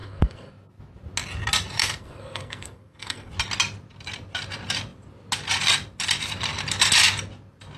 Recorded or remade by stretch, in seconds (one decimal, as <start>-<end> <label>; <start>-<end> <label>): 0.0-0.5 remade; 0.5-1.8 recorded; 1.8-3.3 remade; 3.3-7.8 recorded

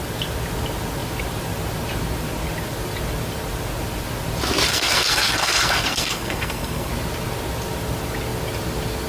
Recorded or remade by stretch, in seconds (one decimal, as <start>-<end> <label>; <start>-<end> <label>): 0.0-4.7 recorded; 4.7-6.9 remade; 6.9-9.1 recorded